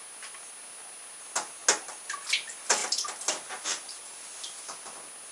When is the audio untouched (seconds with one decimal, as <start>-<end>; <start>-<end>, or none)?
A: 0.0-5.3